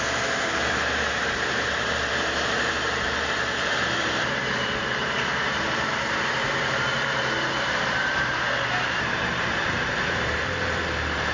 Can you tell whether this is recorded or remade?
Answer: remade